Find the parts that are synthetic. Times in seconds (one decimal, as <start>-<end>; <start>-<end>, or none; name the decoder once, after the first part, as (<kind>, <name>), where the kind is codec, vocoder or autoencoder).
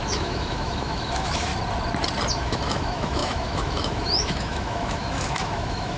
0.0-1.5 (autoencoder, DAC-VAE); 2.3-6.0